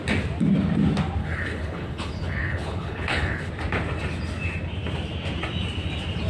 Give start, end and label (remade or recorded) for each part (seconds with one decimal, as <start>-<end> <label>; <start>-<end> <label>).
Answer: 0.0-1.2 recorded; 1.2-3.5 remade; 3.5-6.3 recorded